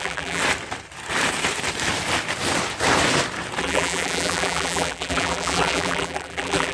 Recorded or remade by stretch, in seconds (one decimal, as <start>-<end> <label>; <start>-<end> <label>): 0.0-0.4 remade; 0.4-3.6 recorded; 3.6-6.7 remade